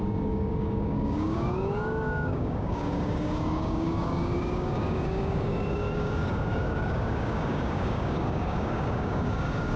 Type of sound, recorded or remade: remade